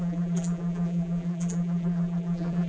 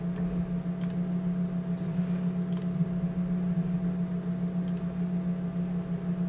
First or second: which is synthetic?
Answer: first